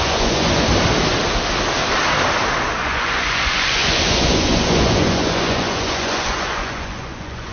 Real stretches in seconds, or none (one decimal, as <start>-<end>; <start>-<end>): 0.7-2.8